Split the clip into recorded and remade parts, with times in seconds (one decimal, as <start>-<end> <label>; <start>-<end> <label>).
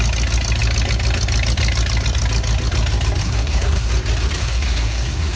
0.0-3.2 recorded; 3.2-3.9 remade; 3.9-4.4 recorded; 4.4-5.4 remade